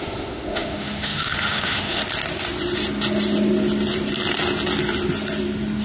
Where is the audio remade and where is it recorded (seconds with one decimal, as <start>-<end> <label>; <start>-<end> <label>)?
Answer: 0.0-2.0 remade; 2.0-5.8 recorded